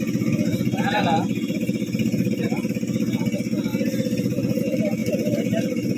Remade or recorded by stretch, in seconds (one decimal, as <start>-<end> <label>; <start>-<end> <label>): 0.0-0.5 recorded; 0.5-2.7 remade; 2.7-3.7 recorded; 3.7-4.6 remade; 4.6-5.0 recorded; 5.0-6.0 remade